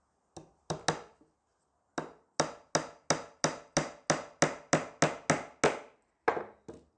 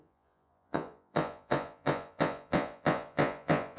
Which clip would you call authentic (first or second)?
first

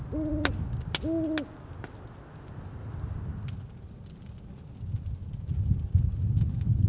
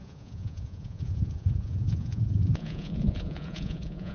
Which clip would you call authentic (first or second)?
first